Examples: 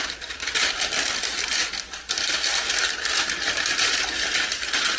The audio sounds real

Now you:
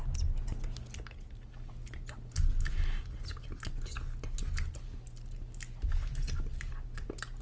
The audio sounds real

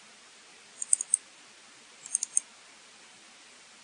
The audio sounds real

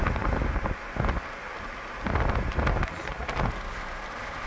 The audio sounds real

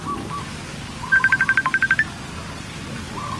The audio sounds real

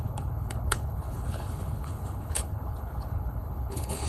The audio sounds fake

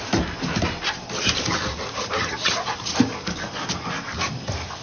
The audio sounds real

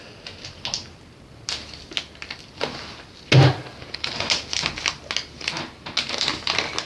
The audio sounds real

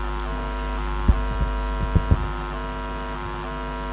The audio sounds real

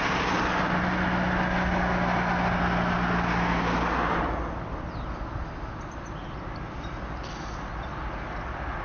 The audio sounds real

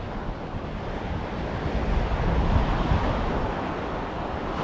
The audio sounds real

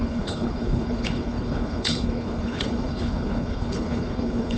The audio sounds fake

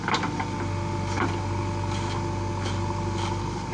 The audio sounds real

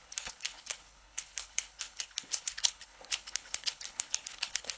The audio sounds fake